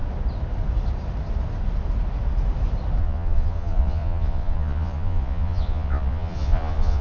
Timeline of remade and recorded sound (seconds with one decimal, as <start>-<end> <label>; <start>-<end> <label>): 0.0-3.0 recorded; 3.0-7.0 remade